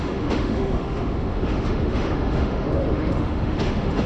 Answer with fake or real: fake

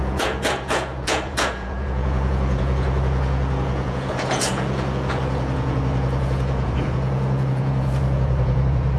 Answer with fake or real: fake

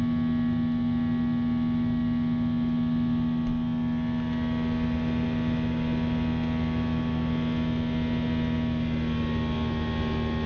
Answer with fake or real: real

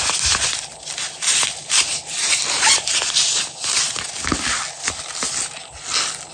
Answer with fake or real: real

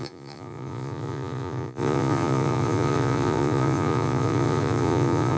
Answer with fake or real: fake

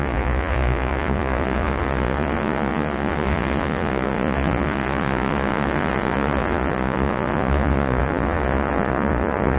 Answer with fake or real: fake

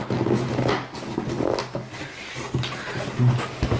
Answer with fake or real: real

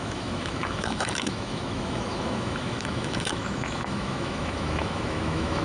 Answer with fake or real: fake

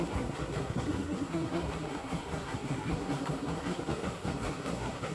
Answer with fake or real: fake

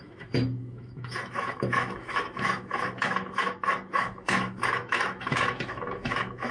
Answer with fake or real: fake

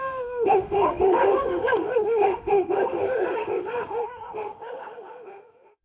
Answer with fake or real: fake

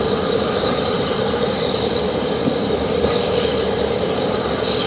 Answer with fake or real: fake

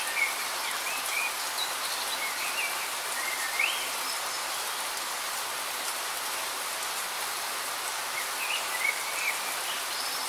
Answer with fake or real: real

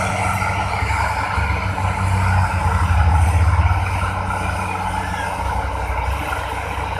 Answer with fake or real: real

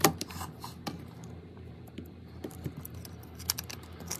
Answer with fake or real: real